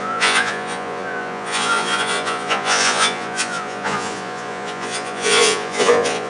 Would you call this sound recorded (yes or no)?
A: no